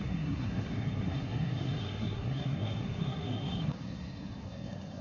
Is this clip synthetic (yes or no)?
yes